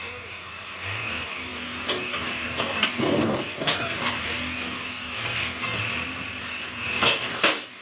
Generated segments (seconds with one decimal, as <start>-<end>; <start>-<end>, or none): 0.0-5.8; 6.4-7.8